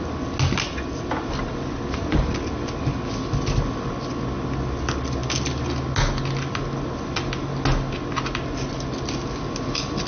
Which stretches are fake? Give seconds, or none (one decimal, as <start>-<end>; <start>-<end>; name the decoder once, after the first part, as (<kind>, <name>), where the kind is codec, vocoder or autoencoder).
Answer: none